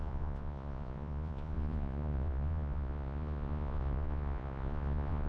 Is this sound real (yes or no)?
no